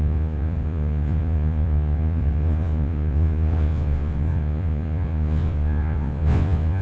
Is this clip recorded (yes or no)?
no